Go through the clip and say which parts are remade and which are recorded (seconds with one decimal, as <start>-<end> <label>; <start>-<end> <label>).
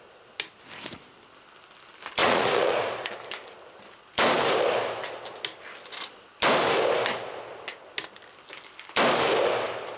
0.0-2.2 recorded; 2.2-3.1 remade; 3.1-10.0 recorded